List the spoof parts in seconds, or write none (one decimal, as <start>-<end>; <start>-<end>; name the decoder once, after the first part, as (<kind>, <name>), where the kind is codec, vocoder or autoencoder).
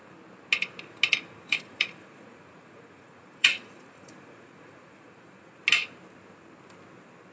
1.3-5.6 (vocoder, Vocos)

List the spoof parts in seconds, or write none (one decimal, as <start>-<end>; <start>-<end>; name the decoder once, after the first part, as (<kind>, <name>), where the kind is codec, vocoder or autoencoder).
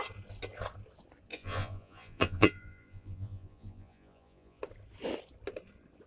1.3-4.6 (vocoder, Vocos)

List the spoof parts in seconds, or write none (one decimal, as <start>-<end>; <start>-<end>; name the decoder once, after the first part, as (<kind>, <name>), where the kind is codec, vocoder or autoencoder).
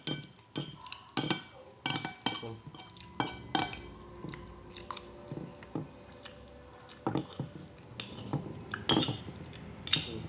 none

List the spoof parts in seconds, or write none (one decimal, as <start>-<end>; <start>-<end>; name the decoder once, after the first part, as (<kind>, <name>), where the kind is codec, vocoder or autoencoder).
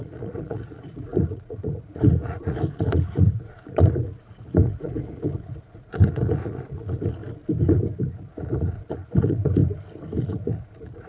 0.0-7.2 (vocoder, Vocos); 8.0-9.6; 10.2-11.1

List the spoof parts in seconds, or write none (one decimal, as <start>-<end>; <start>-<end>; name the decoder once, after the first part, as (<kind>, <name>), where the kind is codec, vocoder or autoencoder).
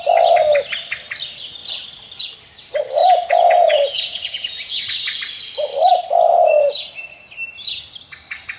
3.0-4.8 (vocoder, Vocos)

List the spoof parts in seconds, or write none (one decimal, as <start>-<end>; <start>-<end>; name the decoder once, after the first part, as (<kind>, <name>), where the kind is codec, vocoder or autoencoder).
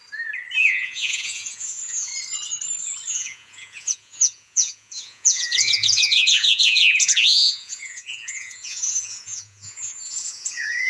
0.6-2.1 (vocoder, Vocos); 3.1-10.9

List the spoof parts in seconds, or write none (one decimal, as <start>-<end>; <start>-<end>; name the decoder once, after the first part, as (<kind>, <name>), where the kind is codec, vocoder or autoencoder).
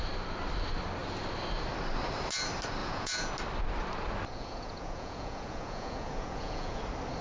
2.8-3.3 (vocoder, Vocos); 4.3-6.8